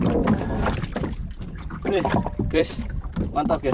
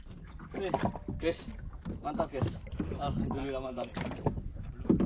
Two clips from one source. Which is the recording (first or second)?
second